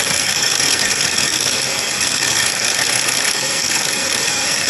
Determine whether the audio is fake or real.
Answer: fake